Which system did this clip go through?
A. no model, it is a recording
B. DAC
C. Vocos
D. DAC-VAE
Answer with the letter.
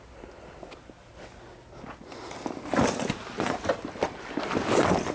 A